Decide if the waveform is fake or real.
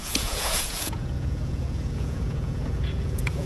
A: fake